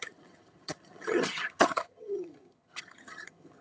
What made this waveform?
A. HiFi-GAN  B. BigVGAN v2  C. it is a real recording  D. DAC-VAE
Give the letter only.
A